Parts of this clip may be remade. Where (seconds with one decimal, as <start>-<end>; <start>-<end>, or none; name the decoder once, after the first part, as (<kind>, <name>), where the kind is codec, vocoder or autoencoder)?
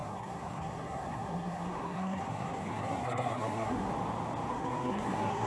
0.0-3.9 (codec, SNAC); 4.5-5.5